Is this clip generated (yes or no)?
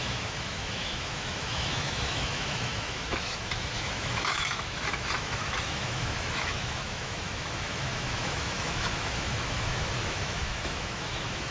yes